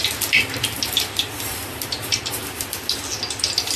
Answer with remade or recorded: recorded